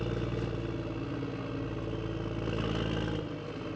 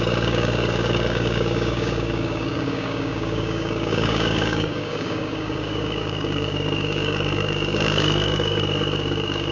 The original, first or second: first